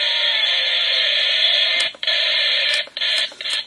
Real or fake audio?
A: fake